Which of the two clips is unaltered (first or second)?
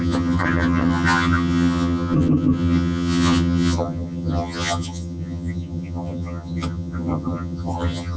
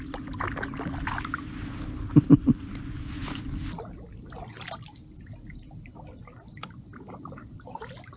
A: second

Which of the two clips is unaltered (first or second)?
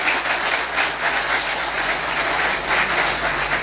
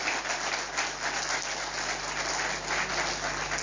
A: second